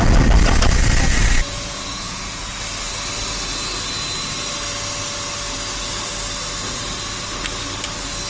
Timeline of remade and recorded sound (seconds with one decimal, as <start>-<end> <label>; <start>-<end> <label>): 0.0-1.4 recorded; 1.4-2.6 remade; 2.6-8.3 recorded